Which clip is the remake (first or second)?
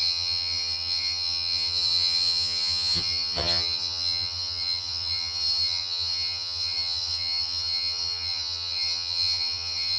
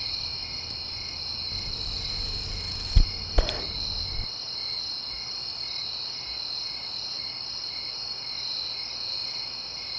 first